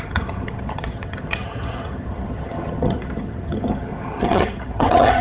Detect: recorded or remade remade